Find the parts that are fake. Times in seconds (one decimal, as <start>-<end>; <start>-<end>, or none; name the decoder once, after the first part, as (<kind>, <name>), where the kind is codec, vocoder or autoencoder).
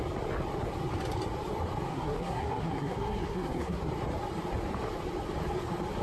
1.9-3.9 (codec, SNAC)